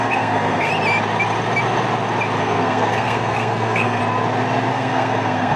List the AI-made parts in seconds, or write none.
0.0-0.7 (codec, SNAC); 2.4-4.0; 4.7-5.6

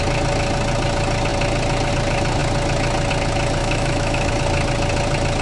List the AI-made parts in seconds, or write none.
3.6-4.3 (autoencoder, DAC-VAE)

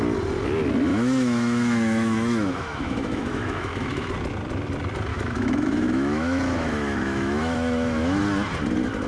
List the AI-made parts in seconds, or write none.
0.9-4.1 (autoencoder, DAC-VAE); 5.1-8.2

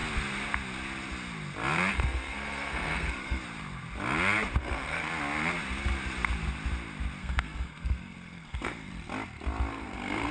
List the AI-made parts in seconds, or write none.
1.9-3.4 (codec, SNAC); 4.6-5.1; 7.2-8.9; 9.7-10.3